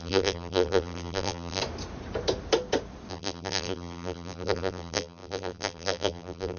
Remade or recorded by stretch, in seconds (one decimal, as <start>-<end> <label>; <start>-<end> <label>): 0.0-1.6 remade; 1.6-3.1 recorded; 3.1-6.6 remade